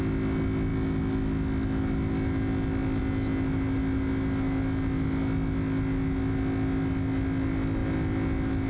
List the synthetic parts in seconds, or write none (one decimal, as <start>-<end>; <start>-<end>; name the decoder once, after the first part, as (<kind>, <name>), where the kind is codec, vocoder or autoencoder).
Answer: none